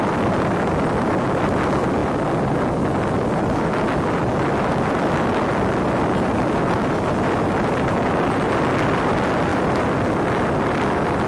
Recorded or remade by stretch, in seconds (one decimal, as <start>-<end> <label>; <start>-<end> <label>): 0.0-11.3 recorded